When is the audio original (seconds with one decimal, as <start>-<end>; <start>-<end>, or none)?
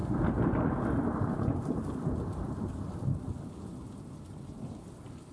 3.2-3.7; 4.7-5.3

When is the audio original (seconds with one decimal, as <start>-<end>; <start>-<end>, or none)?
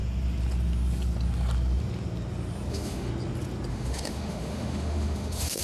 0.0-2.7; 3.1-3.7